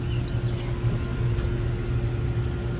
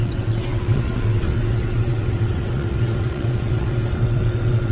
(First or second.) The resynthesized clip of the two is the second